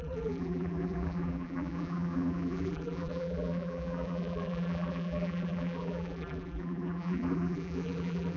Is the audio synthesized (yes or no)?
yes